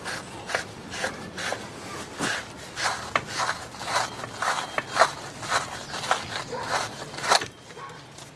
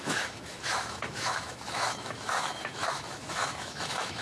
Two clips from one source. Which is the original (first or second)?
first